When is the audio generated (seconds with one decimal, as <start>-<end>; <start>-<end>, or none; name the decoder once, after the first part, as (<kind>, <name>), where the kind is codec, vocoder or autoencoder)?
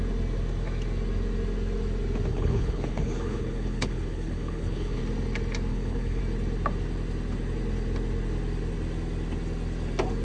2.3-5.0 (codec, HILCodec); 5.7-6.2